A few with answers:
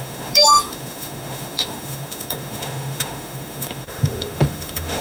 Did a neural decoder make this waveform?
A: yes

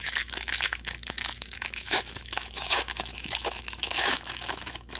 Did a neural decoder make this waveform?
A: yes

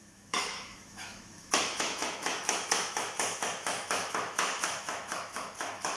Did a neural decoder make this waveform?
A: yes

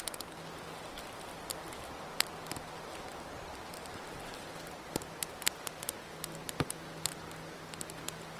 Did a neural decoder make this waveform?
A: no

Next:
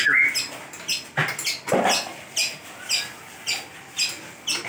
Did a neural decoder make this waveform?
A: no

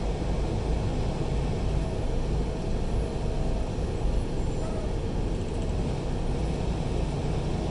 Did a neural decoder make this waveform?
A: no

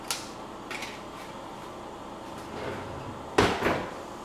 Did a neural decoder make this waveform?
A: no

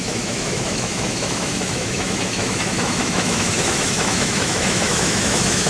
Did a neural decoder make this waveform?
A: yes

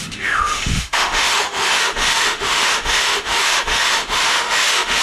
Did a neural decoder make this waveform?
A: yes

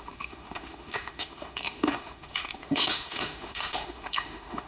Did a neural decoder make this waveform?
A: yes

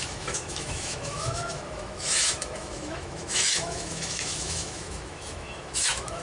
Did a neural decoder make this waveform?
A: yes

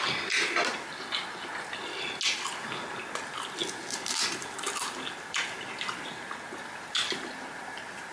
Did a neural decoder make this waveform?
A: no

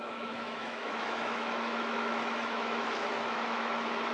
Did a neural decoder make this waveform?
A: yes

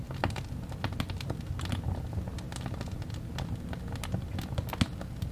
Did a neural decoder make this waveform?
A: no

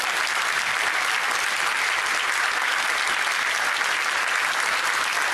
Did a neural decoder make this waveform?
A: no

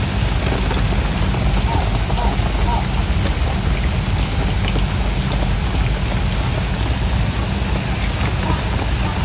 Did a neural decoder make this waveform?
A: no